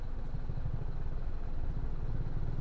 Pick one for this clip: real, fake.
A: real